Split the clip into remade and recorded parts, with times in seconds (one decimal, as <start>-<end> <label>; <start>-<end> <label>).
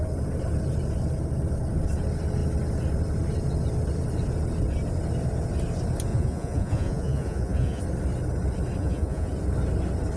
0.0-6.1 recorded; 6.1-7.8 remade; 7.8-8.8 recorded; 8.8-9.3 remade; 9.3-10.2 recorded